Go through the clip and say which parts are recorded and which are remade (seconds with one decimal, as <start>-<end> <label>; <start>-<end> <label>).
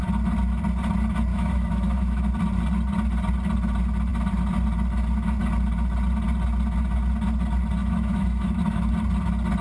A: 0.0-1.3 recorded; 1.3-2.3 remade; 2.3-7.8 recorded; 7.8-8.9 remade; 8.9-9.6 recorded